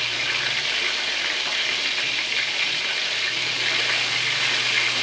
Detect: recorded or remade recorded